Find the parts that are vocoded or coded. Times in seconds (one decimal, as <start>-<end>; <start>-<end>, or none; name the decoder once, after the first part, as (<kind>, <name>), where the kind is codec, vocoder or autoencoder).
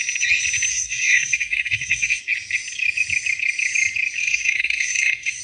0.7-2.2 (codec, SNAC); 4.2-5.4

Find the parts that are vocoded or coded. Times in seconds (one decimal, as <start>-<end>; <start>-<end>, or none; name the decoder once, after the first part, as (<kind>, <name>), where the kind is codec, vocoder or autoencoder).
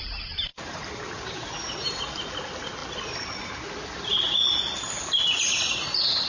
0.5-1.9 (vocoder, BigVGAN v2)